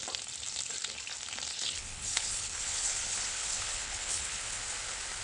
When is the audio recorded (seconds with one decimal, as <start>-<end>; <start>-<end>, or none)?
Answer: 0.0-1.5; 4.6-5.2